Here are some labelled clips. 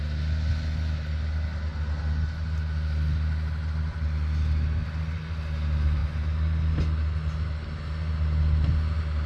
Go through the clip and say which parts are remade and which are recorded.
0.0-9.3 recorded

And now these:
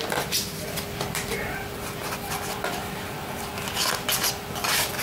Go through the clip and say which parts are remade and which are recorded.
0.0-5.0 recorded

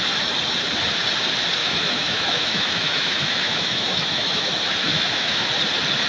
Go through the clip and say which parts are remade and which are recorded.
0.0-1.6 recorded; 1.6-4.5 remade; 4.5-4.9 recorded; 4.9-5.5 remade; 5.5-6.1 recorded

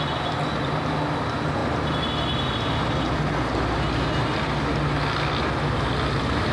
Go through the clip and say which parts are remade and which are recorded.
0.0-6.5 recorded

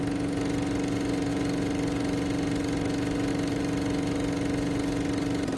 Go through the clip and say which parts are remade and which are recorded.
0.0-5.6 recorded